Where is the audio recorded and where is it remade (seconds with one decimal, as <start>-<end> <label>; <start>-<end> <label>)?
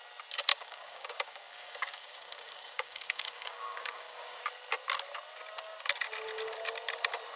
0.0-0.5 recorded; 0.5-4.4 remade; 4.4-7.4 recorded